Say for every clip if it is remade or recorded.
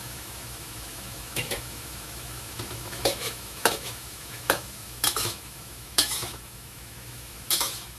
remade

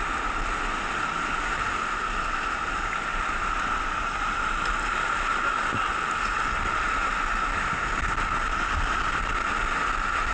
recorded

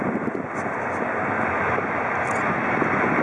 recorded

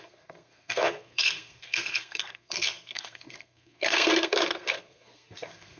remade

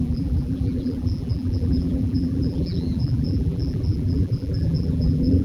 remade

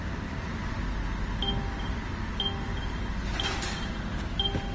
recorded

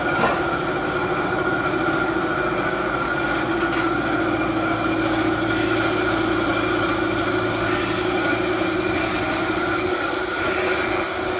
recorded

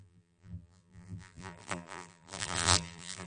remade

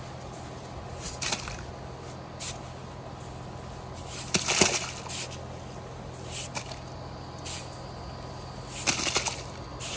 recorded